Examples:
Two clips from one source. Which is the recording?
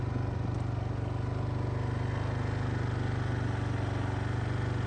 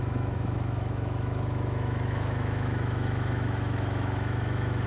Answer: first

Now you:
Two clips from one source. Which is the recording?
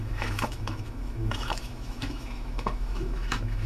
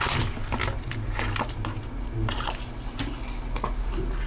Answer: second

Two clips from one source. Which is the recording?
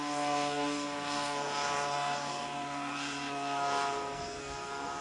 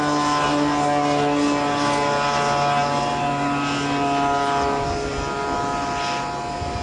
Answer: second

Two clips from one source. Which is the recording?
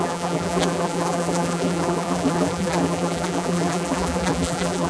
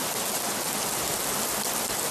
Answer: second